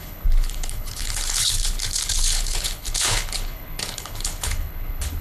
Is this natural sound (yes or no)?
no